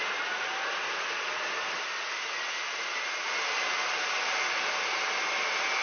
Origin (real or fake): real